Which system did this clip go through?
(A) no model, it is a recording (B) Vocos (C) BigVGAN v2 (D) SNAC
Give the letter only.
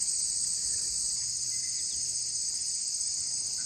A